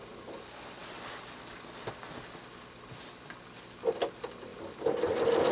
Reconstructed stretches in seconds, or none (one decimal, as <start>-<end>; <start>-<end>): none